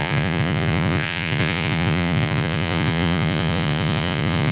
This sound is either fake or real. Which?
fake